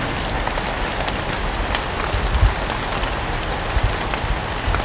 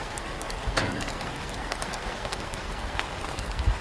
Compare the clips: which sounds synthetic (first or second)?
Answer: second